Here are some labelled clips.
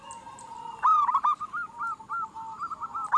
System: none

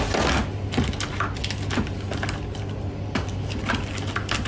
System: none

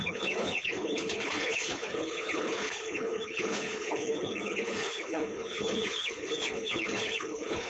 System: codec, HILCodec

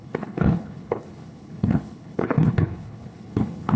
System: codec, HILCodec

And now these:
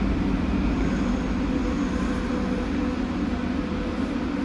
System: none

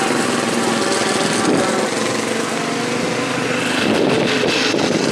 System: none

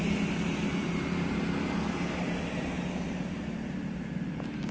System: none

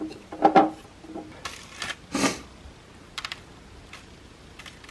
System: none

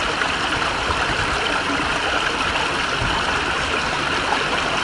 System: none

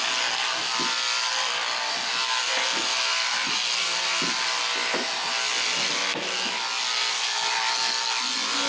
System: none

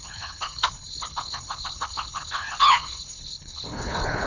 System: codec, HILCodec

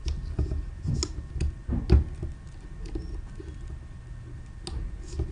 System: none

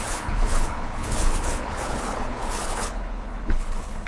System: codec, HILCodec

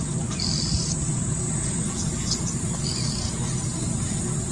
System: none